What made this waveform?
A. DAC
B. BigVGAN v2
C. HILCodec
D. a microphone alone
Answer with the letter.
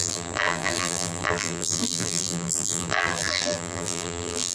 B